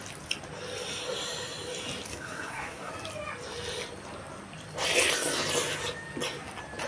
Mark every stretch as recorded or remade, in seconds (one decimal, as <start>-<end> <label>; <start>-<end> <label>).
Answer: 0.0-2.1 recorded; 2.1-2.9 remade; 2.9-6.9 recorded

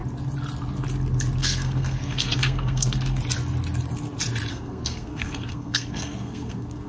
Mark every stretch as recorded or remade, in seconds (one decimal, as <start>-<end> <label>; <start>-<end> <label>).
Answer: 0.0-1.4 recorded; 1.4-3.2 remade; 3.2-4.5 recorded; 4.5-6.9 remade

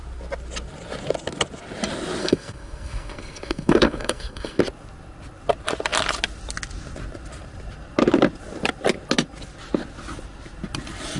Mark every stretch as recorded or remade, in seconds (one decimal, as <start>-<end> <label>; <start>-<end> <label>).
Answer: 0.0-2.2 recorded; 2.2-4.6 remade; 4.6-11.2 recorded